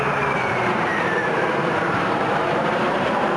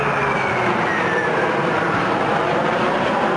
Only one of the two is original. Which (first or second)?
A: second